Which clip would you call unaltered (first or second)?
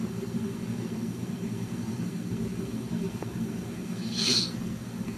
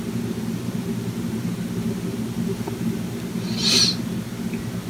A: second